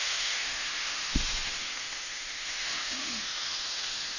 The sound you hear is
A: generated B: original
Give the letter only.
A